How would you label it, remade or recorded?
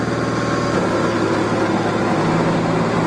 recorded